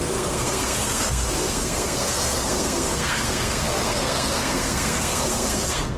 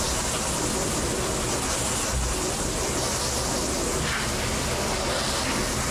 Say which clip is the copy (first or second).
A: first